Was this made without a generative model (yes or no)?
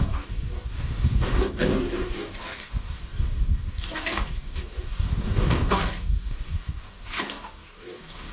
no